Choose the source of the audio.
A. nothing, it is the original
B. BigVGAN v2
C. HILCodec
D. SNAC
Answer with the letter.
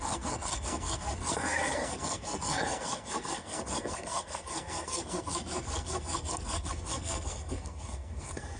D